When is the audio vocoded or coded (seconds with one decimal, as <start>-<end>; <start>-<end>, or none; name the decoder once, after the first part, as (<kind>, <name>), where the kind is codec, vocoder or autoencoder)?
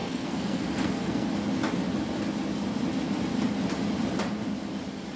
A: 0.0-1.3 (codec, SNAC)